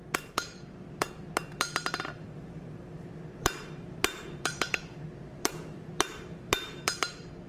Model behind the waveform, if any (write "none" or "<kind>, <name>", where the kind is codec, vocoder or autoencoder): vocoder, BigVGAN v2